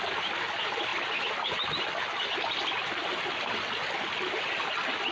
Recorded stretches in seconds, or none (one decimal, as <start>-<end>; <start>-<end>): 0.0-5.1

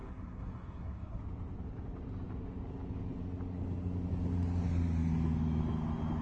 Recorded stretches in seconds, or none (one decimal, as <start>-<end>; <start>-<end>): 1.2-6.2